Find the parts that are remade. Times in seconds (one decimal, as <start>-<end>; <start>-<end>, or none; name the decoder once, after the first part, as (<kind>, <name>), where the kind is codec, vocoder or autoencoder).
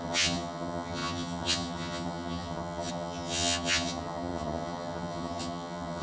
0.0-6.0 (vocoder, HiFi-GAN)